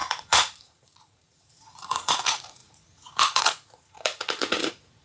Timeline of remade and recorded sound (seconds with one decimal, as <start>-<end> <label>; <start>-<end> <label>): 0.0-5.0 remade